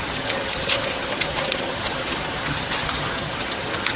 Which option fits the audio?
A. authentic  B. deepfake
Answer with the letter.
B